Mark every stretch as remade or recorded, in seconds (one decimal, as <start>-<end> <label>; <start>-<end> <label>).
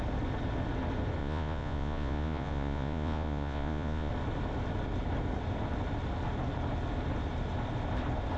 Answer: 0.0-1.2 recorded; 1.2-4.1 remade; 4.1-8.4 recorded